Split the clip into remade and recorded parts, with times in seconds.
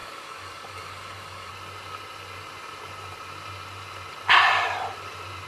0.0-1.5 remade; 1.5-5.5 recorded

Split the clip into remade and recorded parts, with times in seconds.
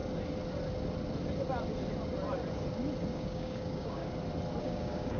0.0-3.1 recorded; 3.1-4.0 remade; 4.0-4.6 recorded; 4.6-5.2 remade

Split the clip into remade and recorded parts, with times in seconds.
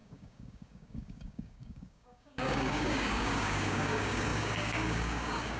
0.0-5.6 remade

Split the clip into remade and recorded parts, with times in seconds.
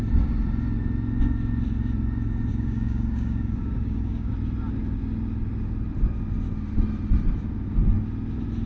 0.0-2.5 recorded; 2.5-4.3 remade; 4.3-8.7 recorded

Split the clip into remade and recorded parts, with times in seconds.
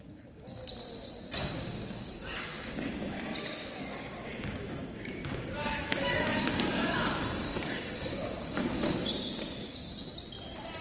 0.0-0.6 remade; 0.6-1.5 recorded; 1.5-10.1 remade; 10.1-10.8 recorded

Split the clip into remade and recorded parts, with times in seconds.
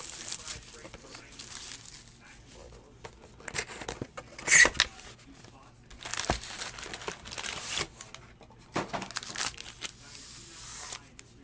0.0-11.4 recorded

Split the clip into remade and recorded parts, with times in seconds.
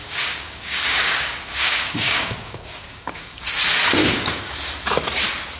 0.0-3.4 remade; 3.4-4.0 recorded; 4.0-4.5 remade; 4.5-5.6 recorded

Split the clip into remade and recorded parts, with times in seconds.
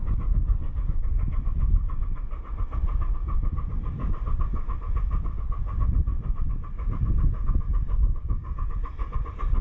0.0-0.8 remade; 0.8-9.6 recorded